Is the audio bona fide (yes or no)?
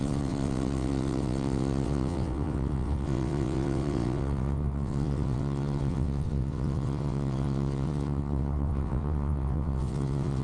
no